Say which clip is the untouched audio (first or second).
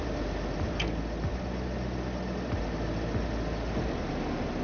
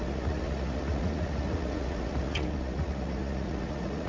first